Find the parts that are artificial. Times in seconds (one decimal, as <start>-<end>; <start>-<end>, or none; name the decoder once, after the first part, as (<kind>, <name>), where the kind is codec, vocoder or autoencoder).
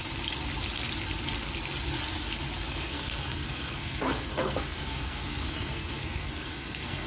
2.7-7.1 (codec, SNAC)